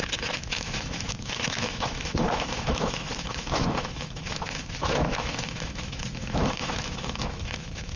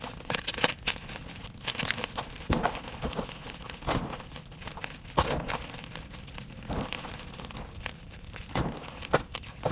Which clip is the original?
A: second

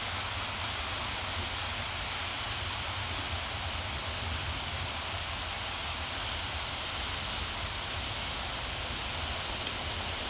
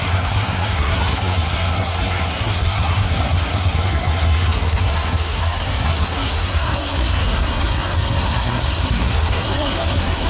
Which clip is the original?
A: first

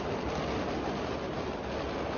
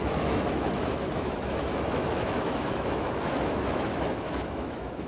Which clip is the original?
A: first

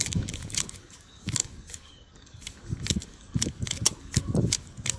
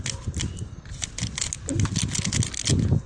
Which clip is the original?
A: second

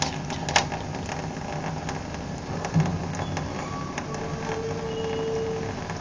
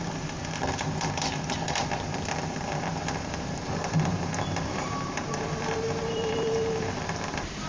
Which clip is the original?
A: first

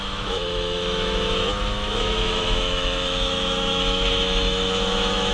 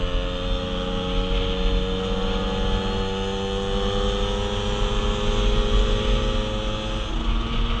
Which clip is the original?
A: second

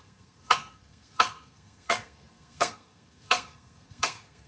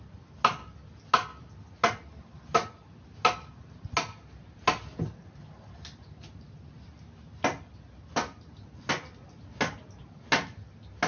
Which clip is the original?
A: second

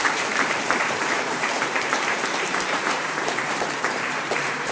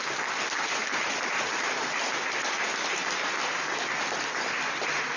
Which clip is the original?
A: second